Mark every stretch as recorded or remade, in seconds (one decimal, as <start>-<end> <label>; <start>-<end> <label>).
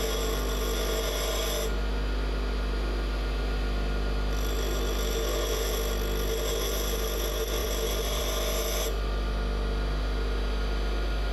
0.0-7.6 recorded; 7.6-8.2 remade; 8.2-11.3 recorded